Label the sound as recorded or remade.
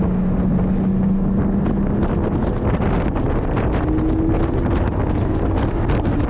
recorded